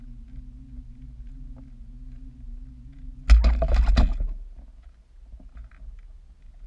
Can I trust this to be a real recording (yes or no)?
yes